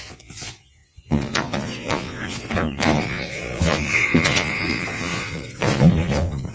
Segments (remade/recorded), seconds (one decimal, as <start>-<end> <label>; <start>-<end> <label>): 0.0-6.5 remade

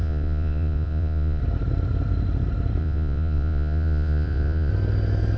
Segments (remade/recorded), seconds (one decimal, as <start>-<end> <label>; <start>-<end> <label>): 0.0-1.4 remade; 1.4-2.8 recorded; 2.8-4.7 remade; 4.7-5.4 recorded

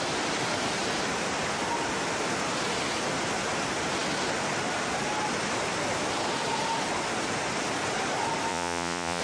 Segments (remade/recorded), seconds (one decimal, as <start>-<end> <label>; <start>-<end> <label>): 0.0-8.5 recorded; 8.5-9.2 remade

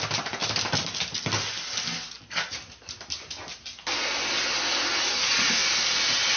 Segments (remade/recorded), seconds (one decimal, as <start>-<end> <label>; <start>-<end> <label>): 0.0-6.4 recorded

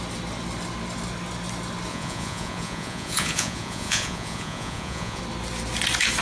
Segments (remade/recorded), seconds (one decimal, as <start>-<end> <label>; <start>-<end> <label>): 0.0-1.9 recorded; 1.9-5.2 remade; 5.2-6.2 recorded

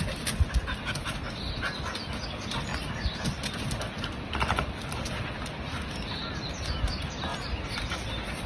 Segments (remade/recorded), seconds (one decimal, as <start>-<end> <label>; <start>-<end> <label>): 0.0-8.5 recorded

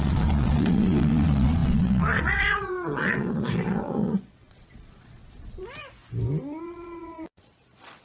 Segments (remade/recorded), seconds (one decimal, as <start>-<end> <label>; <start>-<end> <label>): 0.0-5.6 remade; 5.6-6.6 recorded; 6.6-8.0 remade

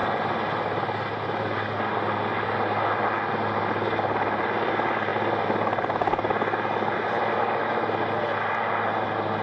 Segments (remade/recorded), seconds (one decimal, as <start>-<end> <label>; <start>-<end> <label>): 0.0-9.4 recorded